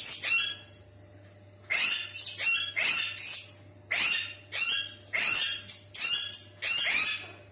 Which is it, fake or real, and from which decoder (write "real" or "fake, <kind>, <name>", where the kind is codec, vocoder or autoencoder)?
real